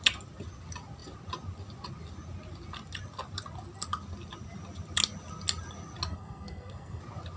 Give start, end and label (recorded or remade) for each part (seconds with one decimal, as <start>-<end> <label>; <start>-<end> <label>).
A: 0.0-6.1 recorded; 6.1-7.0 remade; 7.0-7.4 recorded